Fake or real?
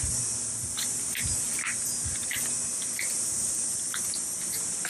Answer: real